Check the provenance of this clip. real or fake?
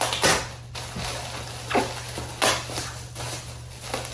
real